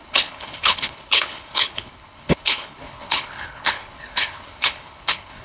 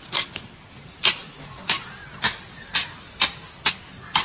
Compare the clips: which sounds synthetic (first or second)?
first